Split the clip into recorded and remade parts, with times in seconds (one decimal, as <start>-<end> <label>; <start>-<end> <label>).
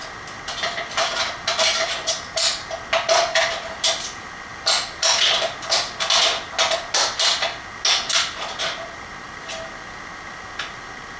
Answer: 0.0-11.2 recorded